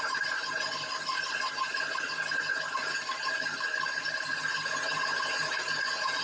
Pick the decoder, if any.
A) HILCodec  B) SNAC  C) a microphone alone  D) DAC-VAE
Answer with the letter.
C